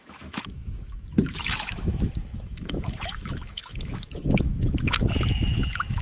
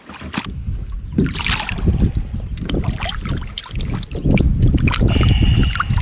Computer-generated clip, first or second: first